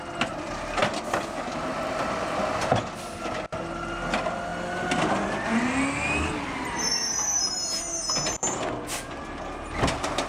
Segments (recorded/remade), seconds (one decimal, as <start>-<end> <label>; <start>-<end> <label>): 0.0-10.3 recorded